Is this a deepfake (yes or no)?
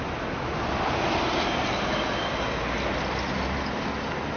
no